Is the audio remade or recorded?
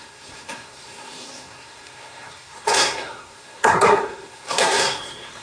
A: remade